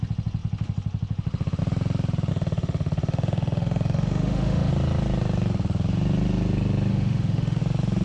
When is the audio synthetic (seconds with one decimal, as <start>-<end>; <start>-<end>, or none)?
2.3-4.7; 6.9-7.6